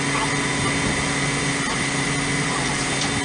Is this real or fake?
real